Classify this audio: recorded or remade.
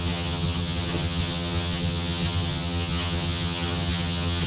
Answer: remade